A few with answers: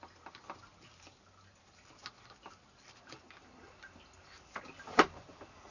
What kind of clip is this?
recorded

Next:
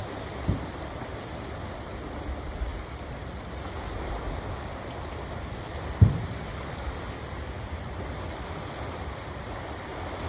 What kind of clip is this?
recorded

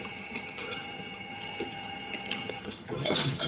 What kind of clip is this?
remade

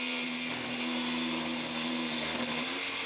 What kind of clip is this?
recorded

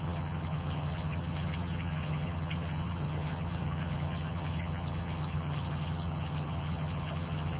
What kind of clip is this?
remade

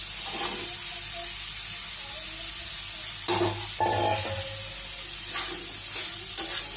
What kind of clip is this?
recorded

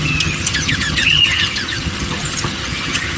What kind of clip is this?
remade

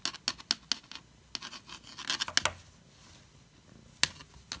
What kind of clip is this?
recorded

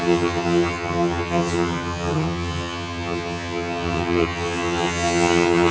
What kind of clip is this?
remade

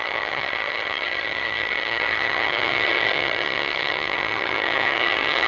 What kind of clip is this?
remade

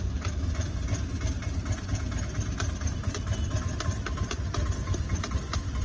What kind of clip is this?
recorded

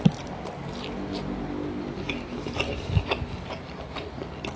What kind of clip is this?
recorded